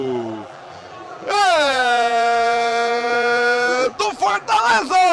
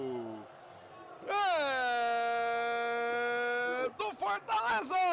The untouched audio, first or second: second